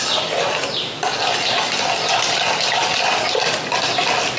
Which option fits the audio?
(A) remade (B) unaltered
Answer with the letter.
B